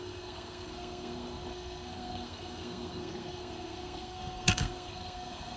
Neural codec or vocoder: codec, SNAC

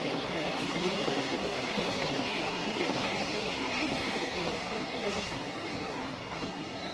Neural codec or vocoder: codec, SNAC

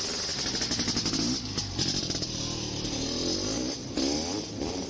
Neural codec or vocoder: none